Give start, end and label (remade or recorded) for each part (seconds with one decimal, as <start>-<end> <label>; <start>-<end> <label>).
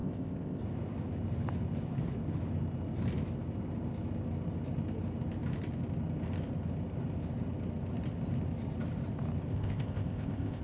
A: 0.0-0.6 remade; 0.6-9.5 recorded; 9.5-10.6 remade